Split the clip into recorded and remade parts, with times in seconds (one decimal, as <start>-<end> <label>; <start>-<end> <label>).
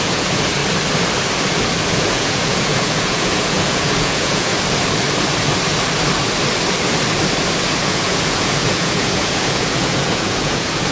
0.0-0.6 remade; 0.6-1.9 recorded; 1.9-4.5 remade; 4.5-7.9 recorded; 7.9-10.9 remade